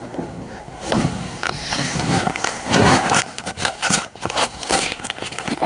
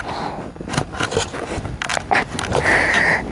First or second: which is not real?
first